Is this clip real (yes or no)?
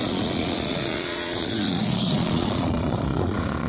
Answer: no